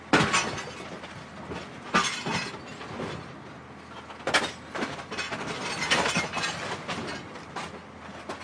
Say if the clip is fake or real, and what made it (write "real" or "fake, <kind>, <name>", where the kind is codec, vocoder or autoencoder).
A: real